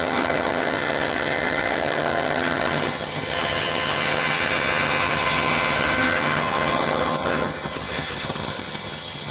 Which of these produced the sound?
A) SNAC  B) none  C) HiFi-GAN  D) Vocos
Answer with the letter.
C